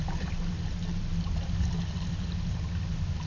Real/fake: real